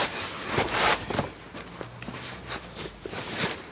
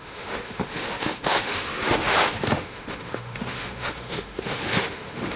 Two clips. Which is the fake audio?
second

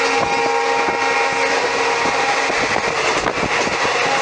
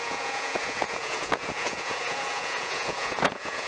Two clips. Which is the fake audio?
second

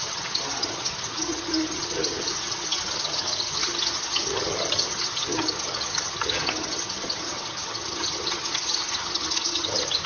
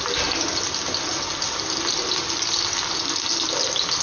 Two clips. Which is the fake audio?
first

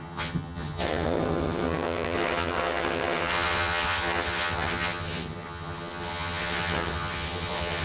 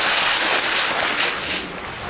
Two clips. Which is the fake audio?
first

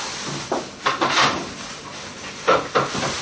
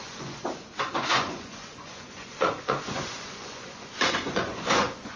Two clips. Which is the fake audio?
second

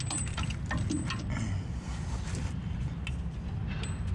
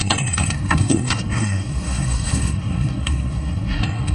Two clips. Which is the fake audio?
second